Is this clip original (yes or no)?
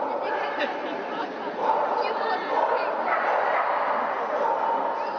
yes